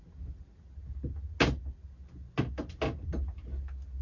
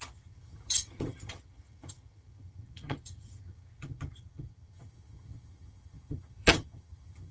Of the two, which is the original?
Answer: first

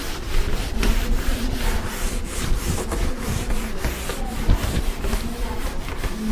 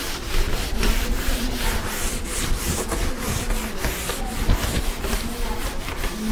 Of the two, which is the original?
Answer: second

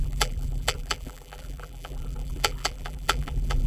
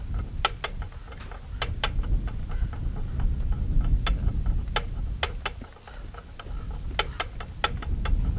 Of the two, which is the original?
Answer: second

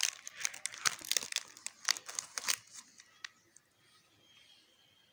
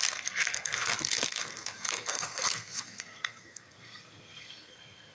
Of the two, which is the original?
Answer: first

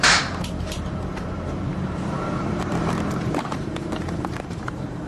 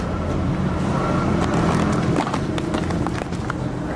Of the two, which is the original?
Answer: second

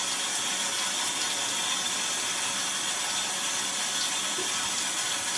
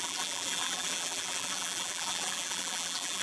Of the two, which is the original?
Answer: first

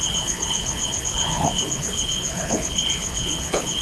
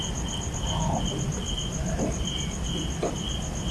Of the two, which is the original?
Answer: second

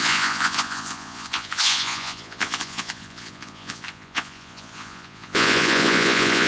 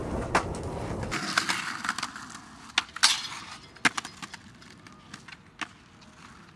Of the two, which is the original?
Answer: second